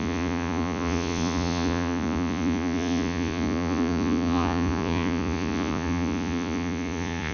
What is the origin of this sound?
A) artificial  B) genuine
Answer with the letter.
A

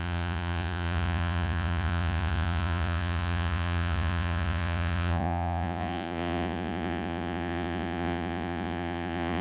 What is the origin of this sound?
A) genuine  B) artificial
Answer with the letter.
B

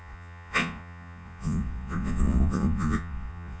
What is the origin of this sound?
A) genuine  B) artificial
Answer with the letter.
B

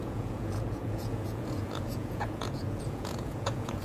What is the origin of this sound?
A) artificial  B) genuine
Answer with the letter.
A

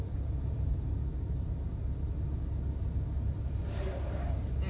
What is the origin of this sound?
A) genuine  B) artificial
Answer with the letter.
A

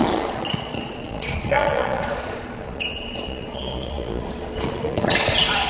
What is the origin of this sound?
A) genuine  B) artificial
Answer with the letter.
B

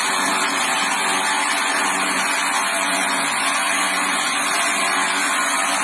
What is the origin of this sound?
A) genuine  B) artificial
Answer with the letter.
B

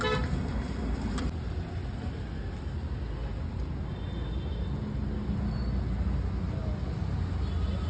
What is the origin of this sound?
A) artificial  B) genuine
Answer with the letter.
B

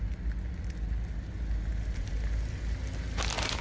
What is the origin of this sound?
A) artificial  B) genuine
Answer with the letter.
B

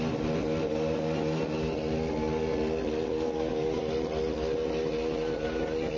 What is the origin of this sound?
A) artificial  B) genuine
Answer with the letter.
B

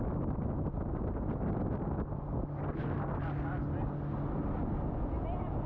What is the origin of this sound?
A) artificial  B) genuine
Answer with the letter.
B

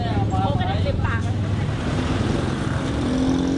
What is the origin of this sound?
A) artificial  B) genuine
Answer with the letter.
B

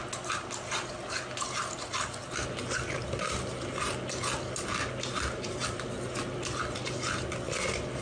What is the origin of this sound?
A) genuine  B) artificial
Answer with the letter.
A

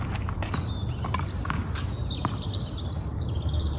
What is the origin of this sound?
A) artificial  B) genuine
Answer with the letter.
B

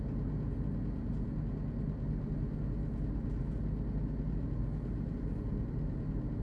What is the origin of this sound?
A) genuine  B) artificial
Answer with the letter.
A